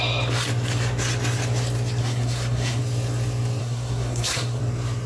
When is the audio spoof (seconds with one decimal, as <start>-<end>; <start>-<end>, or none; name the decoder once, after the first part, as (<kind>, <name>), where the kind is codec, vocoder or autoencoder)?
2.0-2.8 (codec, SNAC); 3.6-4.6